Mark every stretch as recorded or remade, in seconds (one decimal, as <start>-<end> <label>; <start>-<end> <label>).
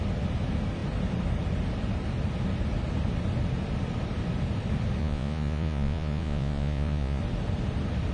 0.0-5.0 recorded; 5.0-7.2 remade; 7.2-8.1 recorded